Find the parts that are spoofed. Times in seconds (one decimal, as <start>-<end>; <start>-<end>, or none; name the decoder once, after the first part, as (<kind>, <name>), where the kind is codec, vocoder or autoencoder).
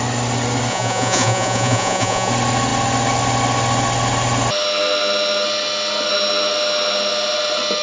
0.7-2.3 (vocoder, Vocos)